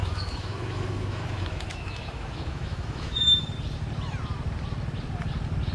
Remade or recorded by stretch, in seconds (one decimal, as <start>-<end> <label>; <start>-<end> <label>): 0.0-3.4 remade; 3.4-5.7 recorded